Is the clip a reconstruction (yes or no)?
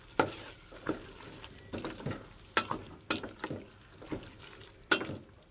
no